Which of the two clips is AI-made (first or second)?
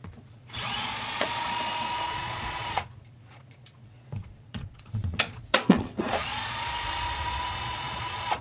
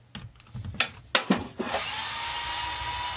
first